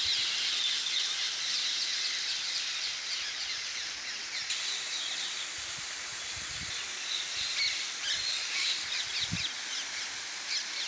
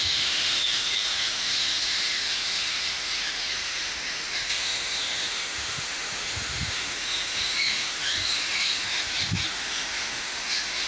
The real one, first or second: first